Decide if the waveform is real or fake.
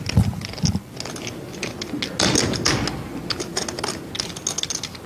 real